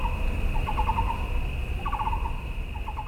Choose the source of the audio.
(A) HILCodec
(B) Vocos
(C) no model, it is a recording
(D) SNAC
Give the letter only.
C